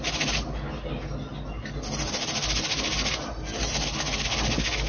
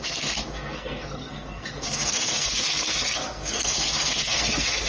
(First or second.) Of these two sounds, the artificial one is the second